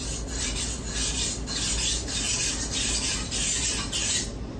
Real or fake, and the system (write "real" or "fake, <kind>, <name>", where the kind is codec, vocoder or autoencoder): real